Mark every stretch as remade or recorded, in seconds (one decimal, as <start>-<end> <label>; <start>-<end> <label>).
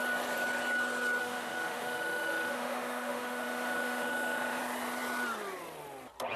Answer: 0.0-1.2 recorded; 1.2-4.6 remade; 4.6-6.4 recorded